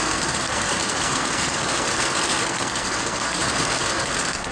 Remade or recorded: remade